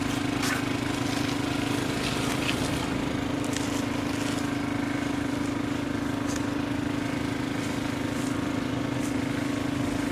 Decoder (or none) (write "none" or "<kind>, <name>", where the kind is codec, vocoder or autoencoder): none